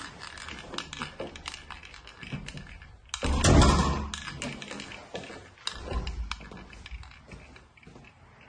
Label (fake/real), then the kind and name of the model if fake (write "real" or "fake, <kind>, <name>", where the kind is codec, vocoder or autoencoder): real